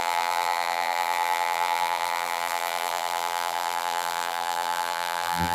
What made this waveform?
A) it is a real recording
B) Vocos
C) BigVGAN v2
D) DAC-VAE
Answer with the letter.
C